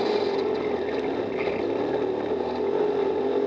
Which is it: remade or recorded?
recorded